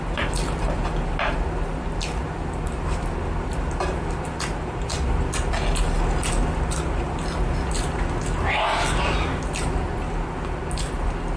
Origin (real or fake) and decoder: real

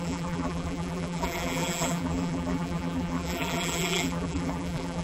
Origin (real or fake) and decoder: fake, vocoder, BigVGAN v2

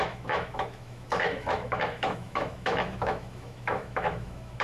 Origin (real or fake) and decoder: fake, autoencoder, DAC-VAE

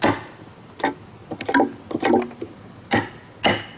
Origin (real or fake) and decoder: real